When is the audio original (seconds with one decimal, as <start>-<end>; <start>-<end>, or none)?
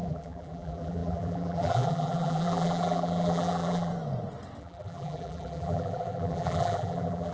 3.9-4.6